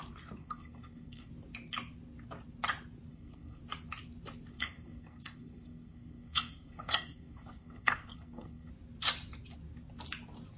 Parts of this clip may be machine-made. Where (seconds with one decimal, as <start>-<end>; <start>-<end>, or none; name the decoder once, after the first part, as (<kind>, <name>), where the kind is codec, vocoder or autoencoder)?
0.4-1.3 (codec, SNAC); 3.1-3.6; 4.5-8.7